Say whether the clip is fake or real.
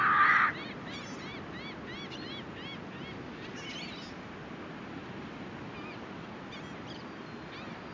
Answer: real